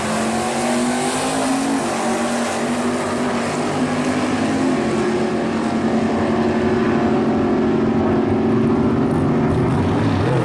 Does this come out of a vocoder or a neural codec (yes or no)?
no